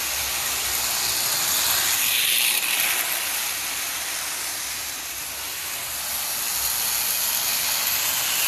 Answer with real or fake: real